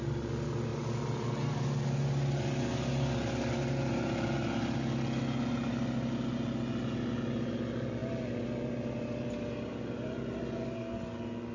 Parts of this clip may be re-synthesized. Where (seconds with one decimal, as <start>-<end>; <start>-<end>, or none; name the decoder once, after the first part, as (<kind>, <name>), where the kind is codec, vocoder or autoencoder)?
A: none